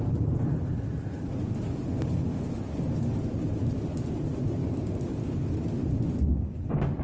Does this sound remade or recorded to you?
recorded